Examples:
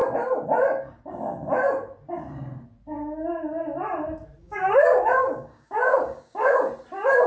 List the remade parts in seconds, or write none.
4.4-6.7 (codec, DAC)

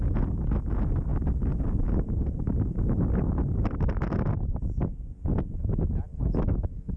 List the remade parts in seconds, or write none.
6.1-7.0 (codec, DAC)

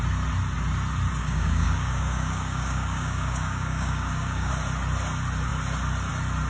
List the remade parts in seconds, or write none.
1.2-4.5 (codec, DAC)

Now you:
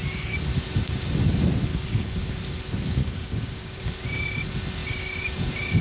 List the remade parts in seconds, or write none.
1.7-2.3 (codec, DAC); 3.0-3.8